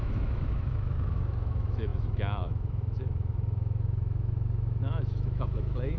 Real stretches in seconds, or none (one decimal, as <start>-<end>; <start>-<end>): none

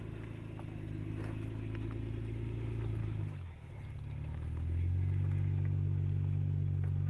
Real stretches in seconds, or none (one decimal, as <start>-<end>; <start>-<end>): 0.0-3.0; 3.7-7.1